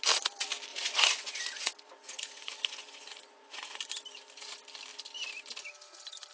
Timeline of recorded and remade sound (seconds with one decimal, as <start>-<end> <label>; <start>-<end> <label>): 0.0-0.7 recorded; 0.7-3.8 remade; 3.8-6.3 recorded